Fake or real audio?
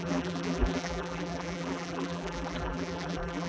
fake